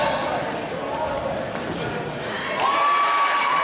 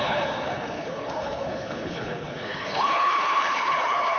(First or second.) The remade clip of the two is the second